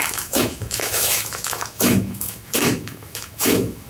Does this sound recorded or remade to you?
remade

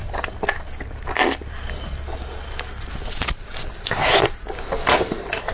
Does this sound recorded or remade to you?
recorded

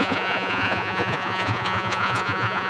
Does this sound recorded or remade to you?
remade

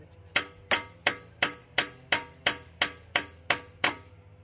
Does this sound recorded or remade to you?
recorded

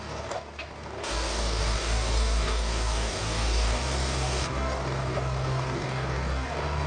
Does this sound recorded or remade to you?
remade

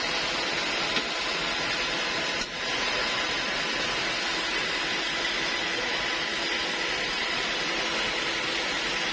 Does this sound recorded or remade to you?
recorded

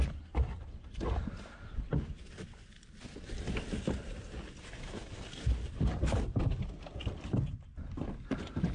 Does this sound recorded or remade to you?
recorded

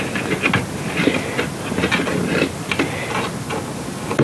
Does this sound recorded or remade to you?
recorded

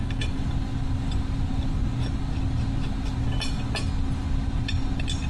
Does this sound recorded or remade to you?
recorded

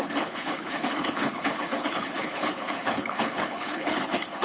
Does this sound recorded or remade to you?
remade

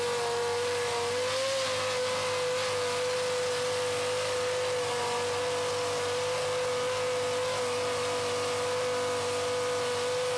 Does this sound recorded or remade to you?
recorded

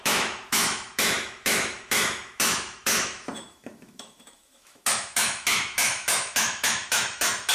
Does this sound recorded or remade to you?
remade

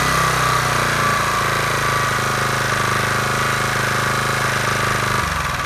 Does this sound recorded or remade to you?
recorded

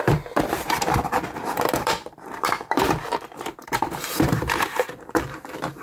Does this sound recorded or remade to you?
remade